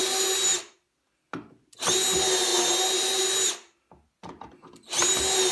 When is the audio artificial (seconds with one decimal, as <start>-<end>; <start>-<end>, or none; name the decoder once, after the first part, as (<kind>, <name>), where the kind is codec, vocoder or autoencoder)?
none